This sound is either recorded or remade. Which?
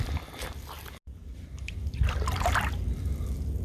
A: recorded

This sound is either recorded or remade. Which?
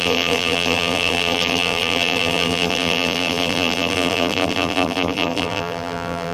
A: remade